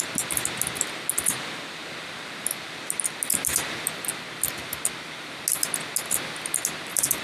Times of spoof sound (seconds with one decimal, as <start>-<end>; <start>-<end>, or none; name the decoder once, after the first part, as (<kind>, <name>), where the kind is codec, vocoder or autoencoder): none